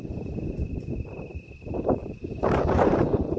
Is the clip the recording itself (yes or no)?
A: no